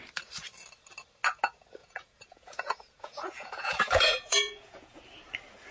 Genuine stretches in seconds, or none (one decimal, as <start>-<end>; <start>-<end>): 0.0-1.8; 5.0-5.7